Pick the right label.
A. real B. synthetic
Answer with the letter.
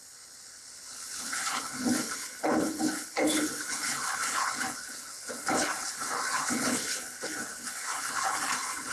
B